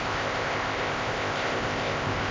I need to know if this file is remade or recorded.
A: remade